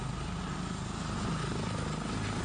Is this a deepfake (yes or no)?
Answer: no